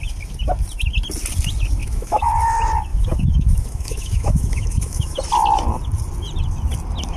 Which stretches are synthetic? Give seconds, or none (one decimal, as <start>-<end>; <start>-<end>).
1.8-2.3; 2.9-5.2